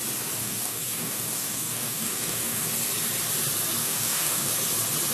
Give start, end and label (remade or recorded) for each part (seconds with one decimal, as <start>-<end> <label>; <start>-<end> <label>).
0.0-0.4 recorded; 0.4-2.7 remade; 2.7-3.8 recorded; 3.8-4.5 remade; 4.5-5.1 recorded